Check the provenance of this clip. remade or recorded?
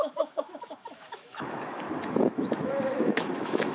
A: remade